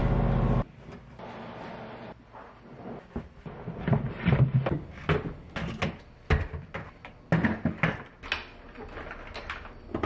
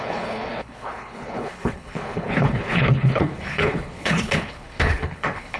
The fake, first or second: second